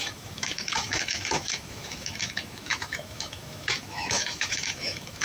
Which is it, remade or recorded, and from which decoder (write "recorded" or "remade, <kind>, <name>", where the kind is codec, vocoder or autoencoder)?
remade, autoencoder, DAC-VAE